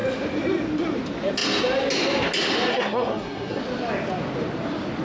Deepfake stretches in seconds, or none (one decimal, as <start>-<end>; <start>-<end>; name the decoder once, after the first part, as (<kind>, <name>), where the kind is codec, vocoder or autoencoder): 2.7-3.6 (codec, SNAC)